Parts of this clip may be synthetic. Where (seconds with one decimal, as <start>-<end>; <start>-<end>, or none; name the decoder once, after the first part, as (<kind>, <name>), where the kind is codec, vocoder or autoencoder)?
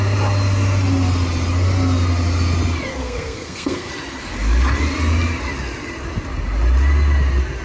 2.9-3.9 (codec, SNAC)